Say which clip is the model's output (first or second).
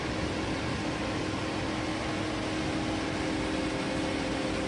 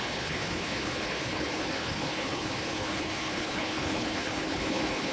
second